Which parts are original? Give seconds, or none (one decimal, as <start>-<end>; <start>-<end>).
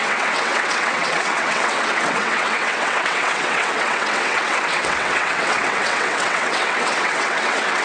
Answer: none